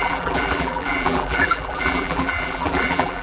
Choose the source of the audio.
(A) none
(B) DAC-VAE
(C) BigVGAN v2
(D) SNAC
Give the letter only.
C